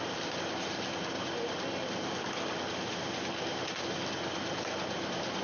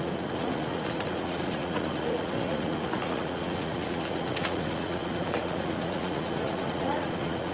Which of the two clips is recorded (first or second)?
first